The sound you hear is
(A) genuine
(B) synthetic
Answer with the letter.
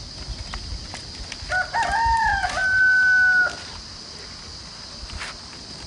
A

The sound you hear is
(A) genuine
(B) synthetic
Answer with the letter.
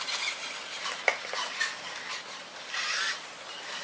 A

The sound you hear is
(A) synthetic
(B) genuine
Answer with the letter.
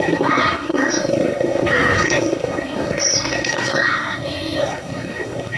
A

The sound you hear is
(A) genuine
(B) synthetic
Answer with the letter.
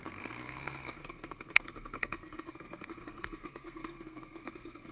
B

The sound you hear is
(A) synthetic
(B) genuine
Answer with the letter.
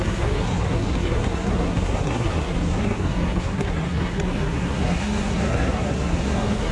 A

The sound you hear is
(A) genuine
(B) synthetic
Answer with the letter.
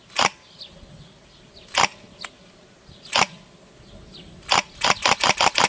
A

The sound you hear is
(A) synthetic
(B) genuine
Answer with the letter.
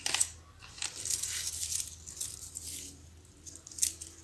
B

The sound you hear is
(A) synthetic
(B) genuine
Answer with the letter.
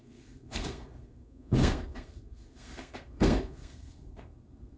A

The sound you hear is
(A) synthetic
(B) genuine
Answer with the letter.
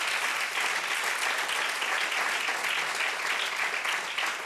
B